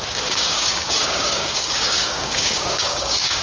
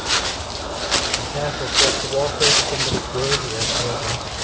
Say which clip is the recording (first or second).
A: second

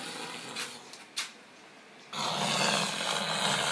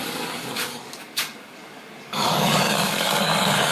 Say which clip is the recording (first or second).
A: first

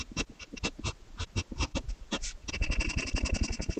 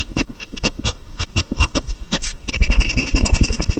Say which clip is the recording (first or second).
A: first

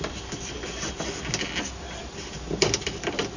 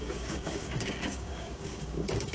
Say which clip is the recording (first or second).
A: first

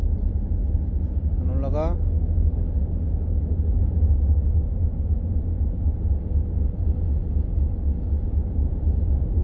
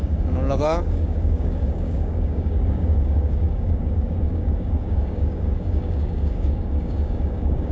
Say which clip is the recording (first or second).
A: first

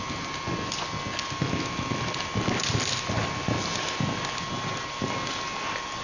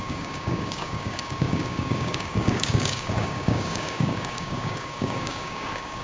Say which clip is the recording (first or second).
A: first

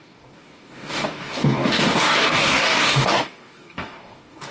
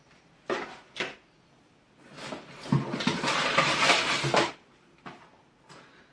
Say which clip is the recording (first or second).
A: second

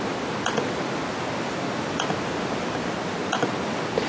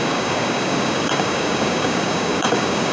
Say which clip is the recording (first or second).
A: first